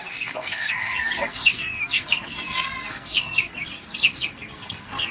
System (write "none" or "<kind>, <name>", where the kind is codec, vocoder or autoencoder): codec, SNAC